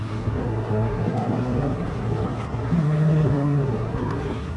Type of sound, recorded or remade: remade